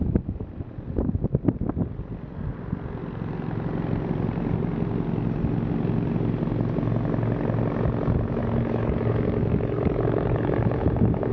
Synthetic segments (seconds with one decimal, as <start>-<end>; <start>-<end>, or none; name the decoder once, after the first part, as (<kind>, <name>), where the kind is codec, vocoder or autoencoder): 8.4-10.8 (codec, DAC)

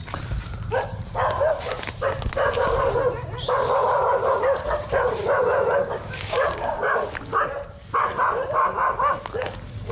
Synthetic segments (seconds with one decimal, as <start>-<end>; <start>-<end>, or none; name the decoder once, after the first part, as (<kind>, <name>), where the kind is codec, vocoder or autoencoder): 5.8-7.0 (codec, DAC)

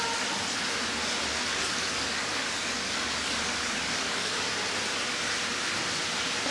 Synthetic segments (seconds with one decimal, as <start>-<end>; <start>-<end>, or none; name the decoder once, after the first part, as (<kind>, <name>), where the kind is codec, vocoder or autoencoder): 1.5-4.6 (codec, DAC)

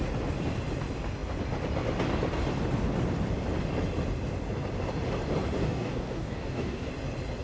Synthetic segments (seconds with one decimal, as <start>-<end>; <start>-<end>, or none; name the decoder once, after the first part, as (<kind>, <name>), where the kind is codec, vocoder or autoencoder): 5.6-6.9 (codec, DAC)

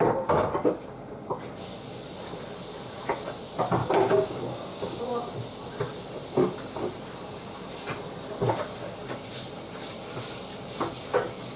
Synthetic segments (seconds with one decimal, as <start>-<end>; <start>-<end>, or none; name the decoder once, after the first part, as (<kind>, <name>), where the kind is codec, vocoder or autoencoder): 3.8-5.0 (codec, DAC)

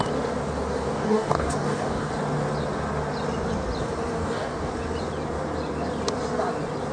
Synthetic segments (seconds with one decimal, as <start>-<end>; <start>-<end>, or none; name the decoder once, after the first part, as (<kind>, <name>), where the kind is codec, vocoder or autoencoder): 0.8-2.1 (codec, DAC); 4.1-4.7

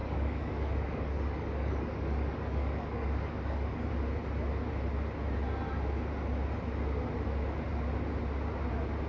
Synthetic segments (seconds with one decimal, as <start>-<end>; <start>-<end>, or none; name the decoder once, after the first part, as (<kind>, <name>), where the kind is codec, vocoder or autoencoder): 0.0-3.9 (codec, DAC)